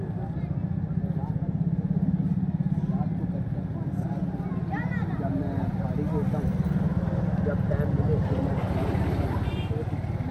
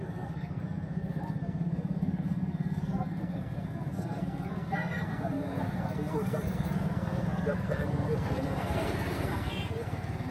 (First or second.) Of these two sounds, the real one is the first